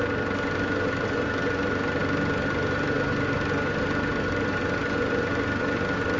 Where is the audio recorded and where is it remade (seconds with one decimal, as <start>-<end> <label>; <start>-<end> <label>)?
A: 0.0-6.2 recorded